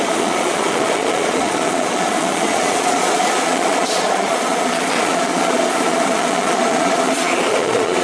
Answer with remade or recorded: remade